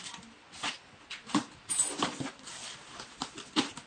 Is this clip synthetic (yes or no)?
no